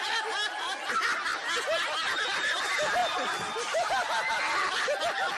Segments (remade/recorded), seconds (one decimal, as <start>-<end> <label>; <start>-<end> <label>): 0.0-5.4 recorded